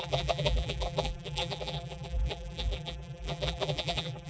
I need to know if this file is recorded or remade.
remade